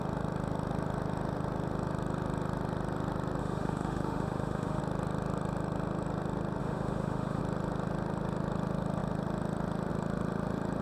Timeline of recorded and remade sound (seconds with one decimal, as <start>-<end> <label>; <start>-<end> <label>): 0.0-3.4 recorded; 3.4-4.8 remade; 4.8-6.6 recorded; 6.6-7.4 remade; 7.4-10.8 recorded